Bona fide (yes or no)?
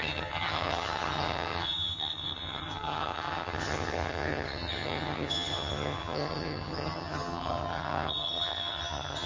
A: no